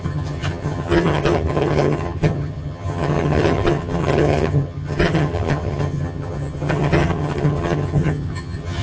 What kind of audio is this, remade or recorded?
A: remade